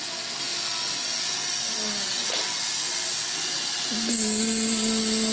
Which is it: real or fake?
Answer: real